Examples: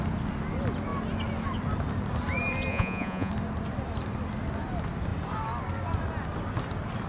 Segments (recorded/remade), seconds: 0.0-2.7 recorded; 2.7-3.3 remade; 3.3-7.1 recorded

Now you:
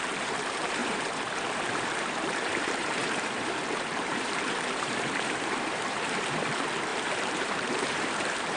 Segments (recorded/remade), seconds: 0.0-8.6 remade

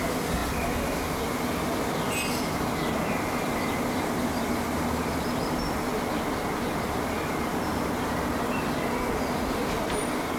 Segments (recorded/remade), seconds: 0.0-0.4 remade; 0.4-4.0 recorded; 4.0-5.9 remade; 5.9-9.5 recorded; 9.5-10.4 remade

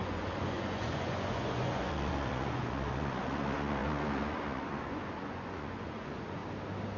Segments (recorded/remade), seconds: 0.0-6.4 remade; 6.4-7.0 recorded

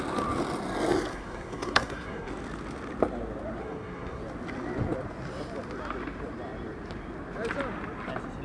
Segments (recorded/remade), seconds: 0.0-1.1 recorded; 1.1-2.3 remade; 2.3-3.6 recorded; 3.6-4.2 remade; 4.2-8.4 recorded

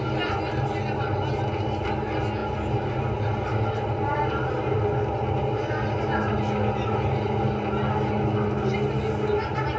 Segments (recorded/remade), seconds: 0.0-9.8 recorded